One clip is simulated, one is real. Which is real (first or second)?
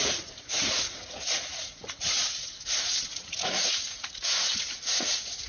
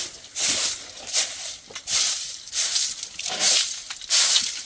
second